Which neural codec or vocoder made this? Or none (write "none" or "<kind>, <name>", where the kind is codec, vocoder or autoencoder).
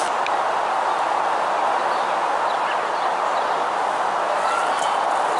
none